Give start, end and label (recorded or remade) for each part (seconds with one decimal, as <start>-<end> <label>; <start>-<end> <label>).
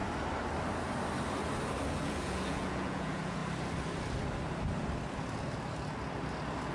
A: 0.0-1.9 recorded; 1.9-3.4 remade; 3.4-6.7 recorded